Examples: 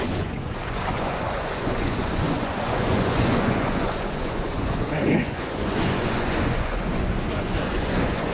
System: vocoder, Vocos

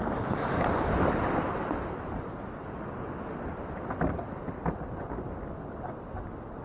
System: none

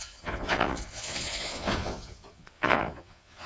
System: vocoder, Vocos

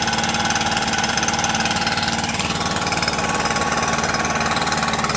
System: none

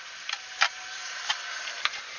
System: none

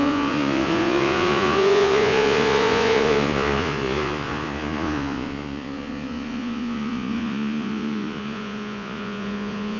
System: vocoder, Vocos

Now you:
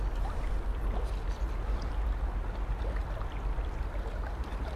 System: none